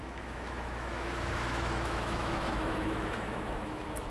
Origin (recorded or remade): remade